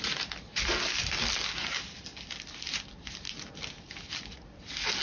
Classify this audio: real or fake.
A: real